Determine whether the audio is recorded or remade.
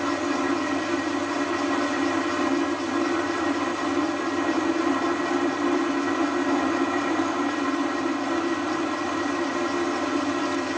recorded